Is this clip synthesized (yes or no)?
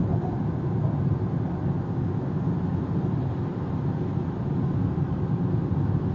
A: no